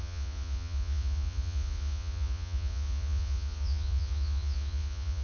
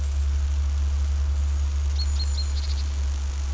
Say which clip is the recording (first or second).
second